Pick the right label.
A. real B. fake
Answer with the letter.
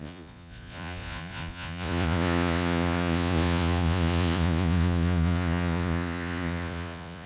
B